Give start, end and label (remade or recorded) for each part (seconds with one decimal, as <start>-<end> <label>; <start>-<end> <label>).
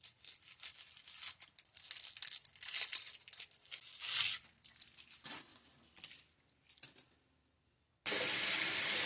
0.0-9.1 recorded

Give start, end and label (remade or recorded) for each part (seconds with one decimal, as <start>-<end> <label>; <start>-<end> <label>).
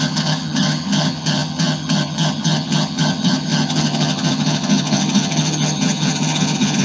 0.0-6.8 remade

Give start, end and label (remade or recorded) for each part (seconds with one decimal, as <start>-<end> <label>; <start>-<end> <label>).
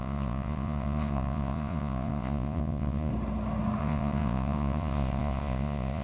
0.0-3.1 remade; 3.1-3.8 recorded; 3.8-6.0 remade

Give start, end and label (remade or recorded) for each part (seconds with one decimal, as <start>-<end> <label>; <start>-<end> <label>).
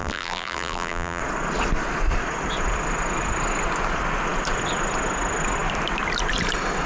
0.0-1.2 remade; 1.2-6.9 recorded